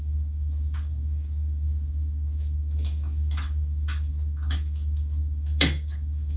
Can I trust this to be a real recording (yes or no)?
no